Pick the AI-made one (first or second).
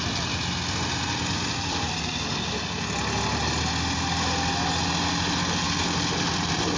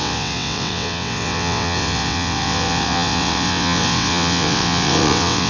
second